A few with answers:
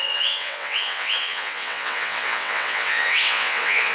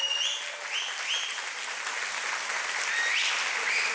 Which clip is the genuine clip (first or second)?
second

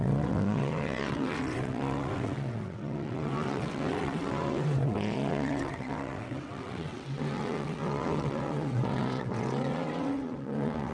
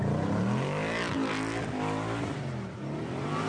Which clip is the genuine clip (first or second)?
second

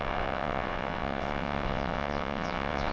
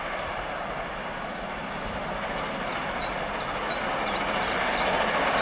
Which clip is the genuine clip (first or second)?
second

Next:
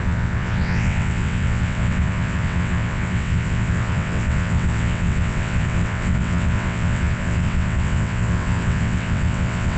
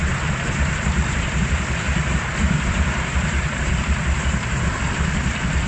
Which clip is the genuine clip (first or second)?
second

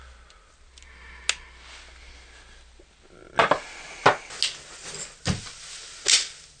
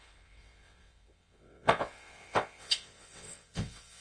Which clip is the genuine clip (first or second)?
first